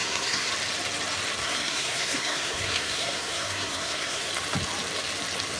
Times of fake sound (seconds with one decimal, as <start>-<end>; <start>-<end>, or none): 0.0-0.5; 1.4-4.3

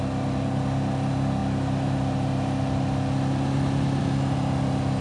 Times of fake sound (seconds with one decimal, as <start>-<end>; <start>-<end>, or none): none

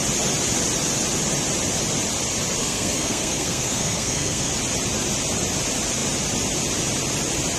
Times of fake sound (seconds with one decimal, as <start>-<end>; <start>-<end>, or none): 2.6-4.5

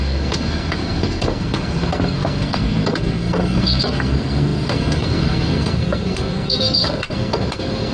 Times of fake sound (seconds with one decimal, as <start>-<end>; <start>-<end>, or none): 0.0-7.9

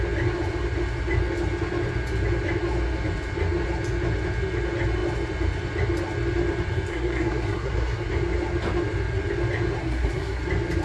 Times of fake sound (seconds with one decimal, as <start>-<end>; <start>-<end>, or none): 6.9-8.1; 9.8-10.4